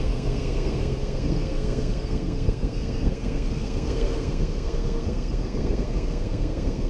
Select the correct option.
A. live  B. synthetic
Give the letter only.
B